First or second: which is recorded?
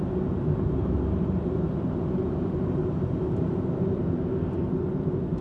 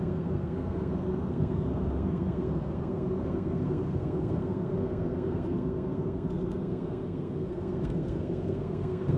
first